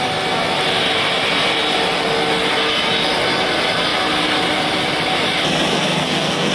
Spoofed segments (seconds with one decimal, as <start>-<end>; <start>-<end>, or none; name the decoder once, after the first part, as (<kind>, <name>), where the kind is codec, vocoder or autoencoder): 5.7-6.5 (codec, SNAC)